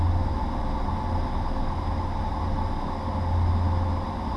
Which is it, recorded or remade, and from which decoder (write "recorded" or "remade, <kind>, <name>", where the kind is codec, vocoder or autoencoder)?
recorded